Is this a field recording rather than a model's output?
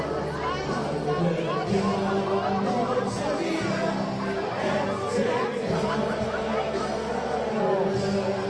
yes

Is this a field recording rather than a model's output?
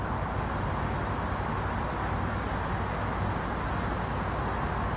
yes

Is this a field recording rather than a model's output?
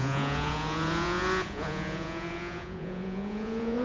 no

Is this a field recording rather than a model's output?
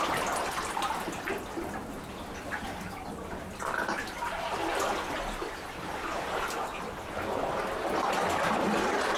yes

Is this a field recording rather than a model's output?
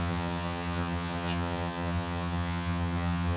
no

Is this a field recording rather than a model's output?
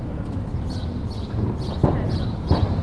no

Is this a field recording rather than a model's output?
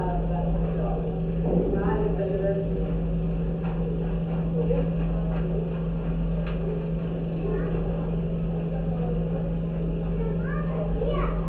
yes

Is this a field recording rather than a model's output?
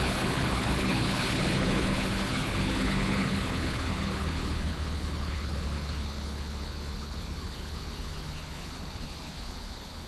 no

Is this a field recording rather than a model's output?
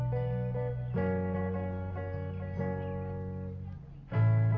yes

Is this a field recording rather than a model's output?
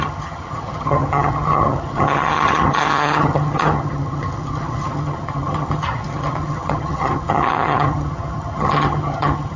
no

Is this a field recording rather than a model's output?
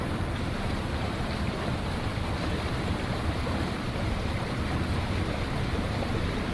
no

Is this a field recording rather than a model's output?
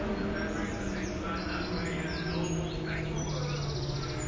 yes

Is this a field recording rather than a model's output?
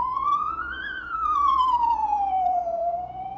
no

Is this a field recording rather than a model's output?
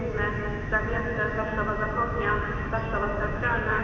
no